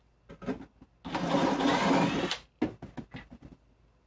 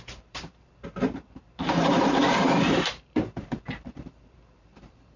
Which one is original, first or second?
first